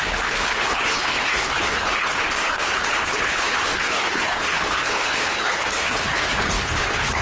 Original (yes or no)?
no